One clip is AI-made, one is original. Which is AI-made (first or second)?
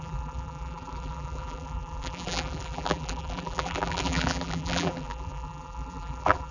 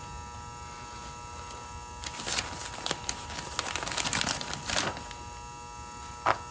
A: first